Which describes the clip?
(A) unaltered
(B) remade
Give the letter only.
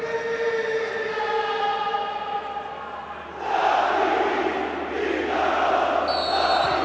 A